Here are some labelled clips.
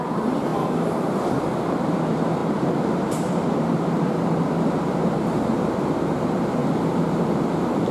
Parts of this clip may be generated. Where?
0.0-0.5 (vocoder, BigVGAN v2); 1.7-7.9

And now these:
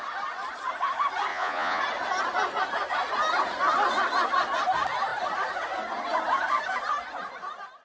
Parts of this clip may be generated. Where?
1.3-1.8 (vocoder, Vocos)

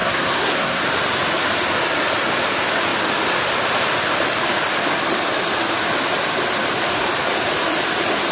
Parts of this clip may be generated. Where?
0.0-0.8 (codec, SNAC)

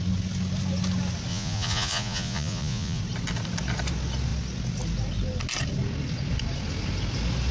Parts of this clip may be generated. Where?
1.3-3.0 (vocoder, Vocos)